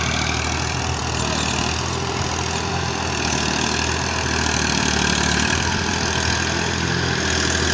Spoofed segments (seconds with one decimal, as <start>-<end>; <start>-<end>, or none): none